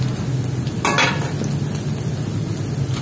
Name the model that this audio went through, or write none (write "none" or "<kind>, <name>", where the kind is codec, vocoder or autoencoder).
none